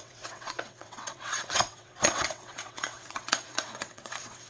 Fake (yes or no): yes